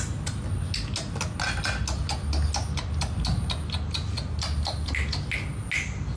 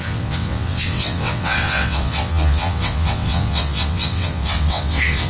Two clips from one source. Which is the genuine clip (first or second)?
first